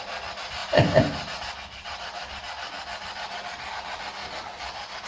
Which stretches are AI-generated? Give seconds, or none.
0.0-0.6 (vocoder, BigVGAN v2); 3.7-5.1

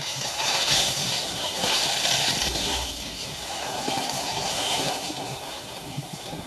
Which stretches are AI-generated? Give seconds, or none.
0.0-1.8 (codec, SNAC); 2.5-6.5

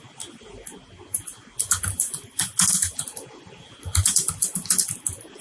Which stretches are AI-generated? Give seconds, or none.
none

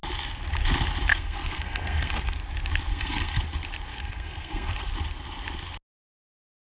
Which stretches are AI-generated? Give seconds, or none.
1.1-2.4 (codec, SNAC); 2.9-3.4; 3.9-4.9

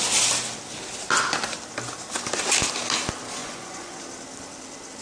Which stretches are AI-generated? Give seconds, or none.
3.4-4.0 (vocoder, Vocos)

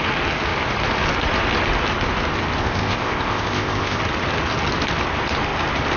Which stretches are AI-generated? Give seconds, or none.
2.6-4.0 (codec, ZipCodec)

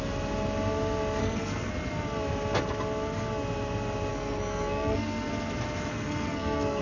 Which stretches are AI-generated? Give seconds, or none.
1.2-1.7 (codec, SNAC); 4.1-5.3; 5.9-6.8

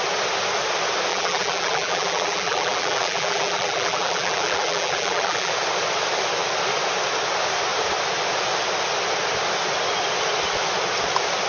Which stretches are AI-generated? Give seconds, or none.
1.1-5.5 (vocoder, BigVGAN v2)